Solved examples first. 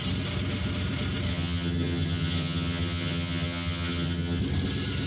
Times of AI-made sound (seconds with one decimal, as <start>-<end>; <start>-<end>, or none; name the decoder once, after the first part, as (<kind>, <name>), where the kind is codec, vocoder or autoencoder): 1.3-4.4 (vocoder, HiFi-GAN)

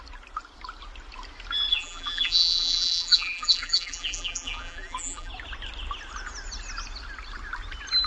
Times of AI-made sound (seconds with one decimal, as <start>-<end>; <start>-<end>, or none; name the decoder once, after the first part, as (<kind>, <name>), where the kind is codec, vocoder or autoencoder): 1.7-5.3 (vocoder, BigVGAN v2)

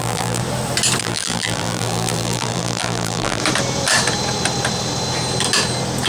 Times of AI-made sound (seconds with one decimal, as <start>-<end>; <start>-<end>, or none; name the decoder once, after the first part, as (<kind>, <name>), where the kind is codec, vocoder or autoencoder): 0.0-0.4 (vocoder, BigVGAN v2); 1.0-3.4